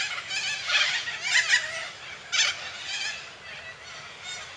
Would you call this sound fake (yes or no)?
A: no